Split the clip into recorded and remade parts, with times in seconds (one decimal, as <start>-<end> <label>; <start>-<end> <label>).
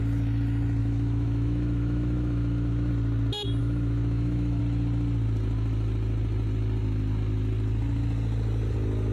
0.0-0.8 recorded; 0.8-2.9 remade; 2.9-3.6 recorded; 3.6-4.6 remade; 4.6-9.1 recorded